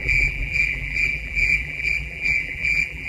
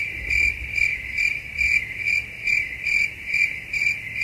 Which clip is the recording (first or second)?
second